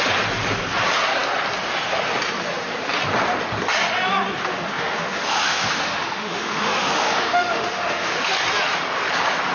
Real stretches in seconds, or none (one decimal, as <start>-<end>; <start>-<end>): 0.0-4.5; 8.2-9.5